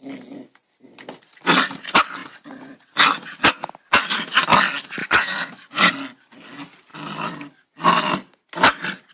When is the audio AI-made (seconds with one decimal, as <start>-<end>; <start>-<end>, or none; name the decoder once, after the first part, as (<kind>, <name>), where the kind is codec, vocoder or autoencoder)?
5.0-5.9 (vocoder, Vocos)